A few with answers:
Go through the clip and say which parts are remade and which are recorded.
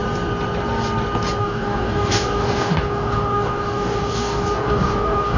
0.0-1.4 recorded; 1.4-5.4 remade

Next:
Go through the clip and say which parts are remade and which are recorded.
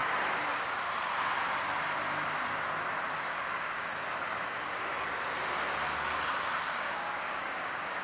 0.0-3.3 recorded; 3.3-3.9 remade; 3.9-6.8 recorded; 6.8-8.0 remade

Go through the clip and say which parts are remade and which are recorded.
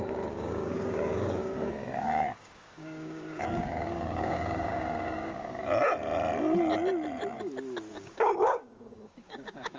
0.0-5.6 remade; 5.6-7.9 recorded; 7.9-9.8 remade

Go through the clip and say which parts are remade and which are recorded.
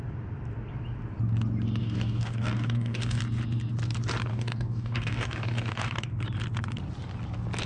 0.0-1.8 recorded; 1.8-3.2 remade; 3.2-4.3 recorded; 4.3-6.1 remade; 6.1-7.7 recorded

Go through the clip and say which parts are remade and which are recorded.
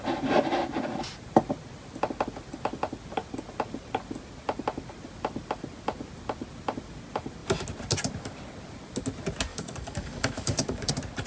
0.0-9.5 recorded; 9.5-10.9 remade; 10.9-11.3 recorded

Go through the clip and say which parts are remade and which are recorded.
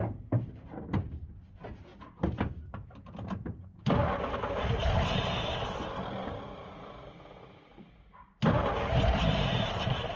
0.0-10.2 recorded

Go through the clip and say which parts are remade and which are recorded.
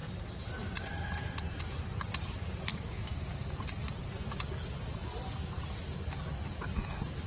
0.0-2.7 recorded; 2.7-3.2 remade; 3.2-7.3 recorded